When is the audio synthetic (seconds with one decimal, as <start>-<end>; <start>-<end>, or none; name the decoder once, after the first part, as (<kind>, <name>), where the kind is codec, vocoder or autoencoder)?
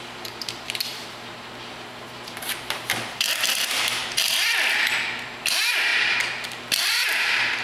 0.0-4.0 (vocoder, BigVGAN v2); 5.4-5.9; 6.8-7.6